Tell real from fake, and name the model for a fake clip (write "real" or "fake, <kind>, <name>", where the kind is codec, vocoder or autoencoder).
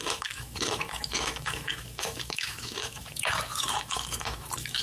fake, autoencoder, DAC-VAE